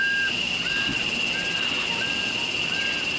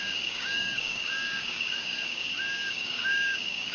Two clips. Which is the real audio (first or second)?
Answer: first